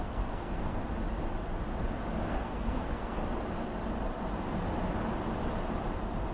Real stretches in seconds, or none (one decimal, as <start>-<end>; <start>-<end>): 0.8-2.3; 3.2-6.3